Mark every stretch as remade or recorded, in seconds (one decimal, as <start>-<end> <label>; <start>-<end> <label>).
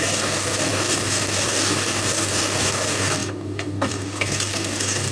0.0-5.1 remade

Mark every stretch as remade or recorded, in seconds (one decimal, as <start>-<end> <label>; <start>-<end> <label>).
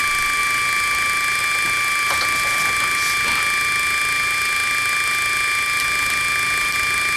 0.0-7.2 recorded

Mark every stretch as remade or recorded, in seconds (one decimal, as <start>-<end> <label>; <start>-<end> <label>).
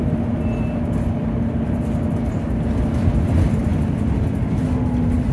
0.0-2.7 remade; 2.7-5.3 recorded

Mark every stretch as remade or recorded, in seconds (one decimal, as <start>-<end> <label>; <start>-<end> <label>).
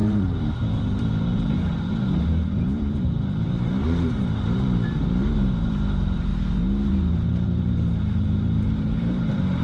0.0-6.3 remade; 6.3-6.9 recorded; 6.9-9.6 remade